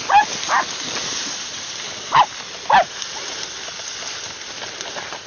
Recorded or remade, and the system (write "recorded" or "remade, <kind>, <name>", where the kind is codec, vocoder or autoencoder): recorded